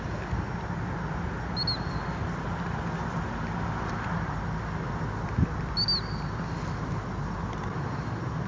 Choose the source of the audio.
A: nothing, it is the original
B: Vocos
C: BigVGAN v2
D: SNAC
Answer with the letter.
A